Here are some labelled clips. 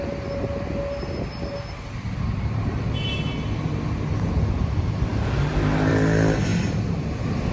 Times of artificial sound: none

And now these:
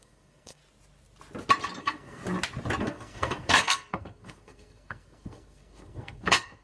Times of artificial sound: 0.0-0.6 (codec, SNAC); 1.8-2.2; 2.8-6.6

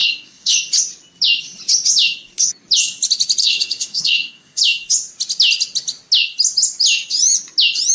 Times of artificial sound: 0.0-0.5 (codec, SNAC); 3.4-4.6